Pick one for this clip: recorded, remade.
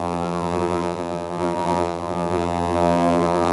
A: remade